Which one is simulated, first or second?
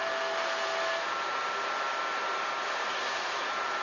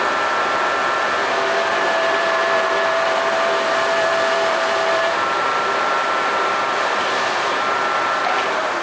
second